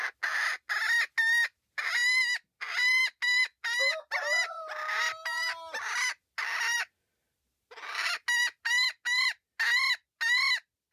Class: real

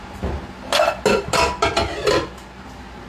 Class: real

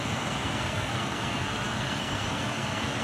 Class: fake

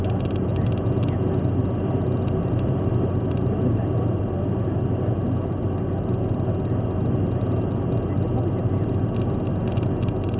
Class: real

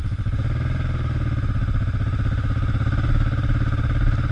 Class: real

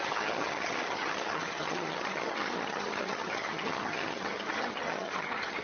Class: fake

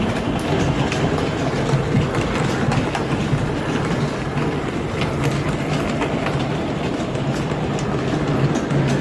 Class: real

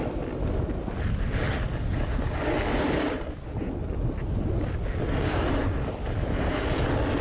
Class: real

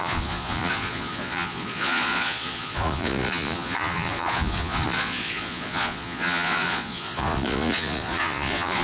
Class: fake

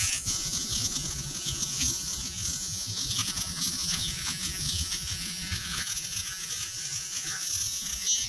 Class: fake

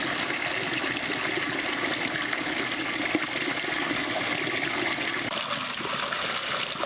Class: real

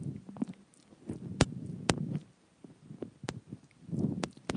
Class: real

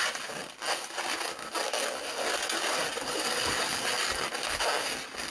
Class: real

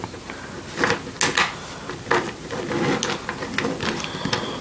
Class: real